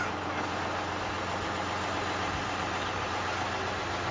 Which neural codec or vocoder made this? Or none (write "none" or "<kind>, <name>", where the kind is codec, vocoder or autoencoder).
none